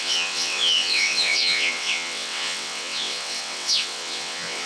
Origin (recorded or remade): remade